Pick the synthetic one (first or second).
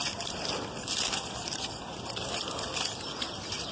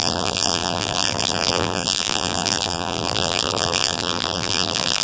second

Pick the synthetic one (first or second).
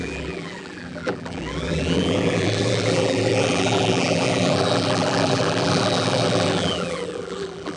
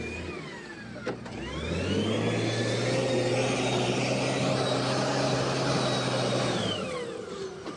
first